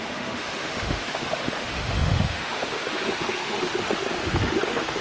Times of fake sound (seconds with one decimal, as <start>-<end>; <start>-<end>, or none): 0.0-5.0